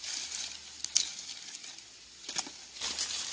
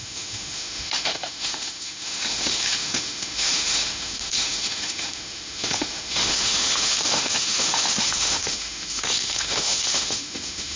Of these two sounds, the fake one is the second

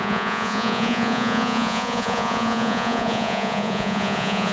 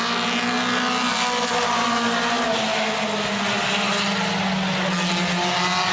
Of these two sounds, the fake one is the first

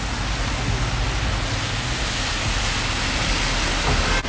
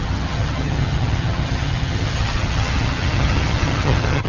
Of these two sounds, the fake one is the second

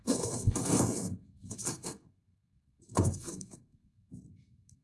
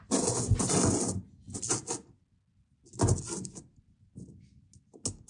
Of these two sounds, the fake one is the first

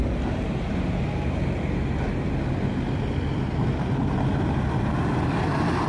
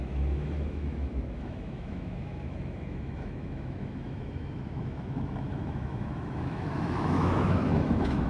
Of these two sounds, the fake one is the second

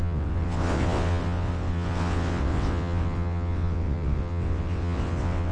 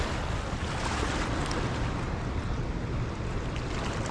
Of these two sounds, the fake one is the first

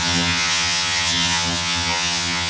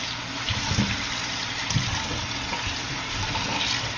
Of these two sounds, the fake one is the first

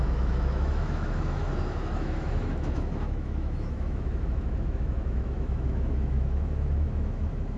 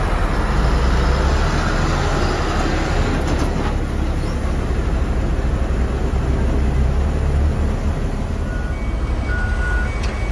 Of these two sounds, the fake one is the first